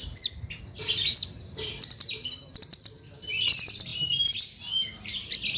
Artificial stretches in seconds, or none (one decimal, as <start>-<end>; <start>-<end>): none